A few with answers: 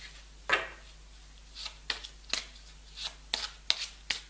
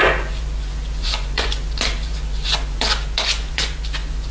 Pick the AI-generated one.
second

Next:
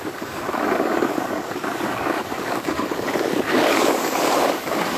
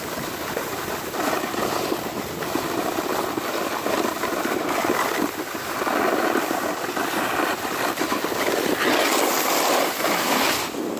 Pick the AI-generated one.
first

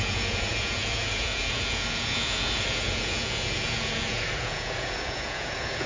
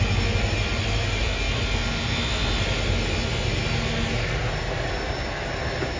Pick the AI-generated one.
first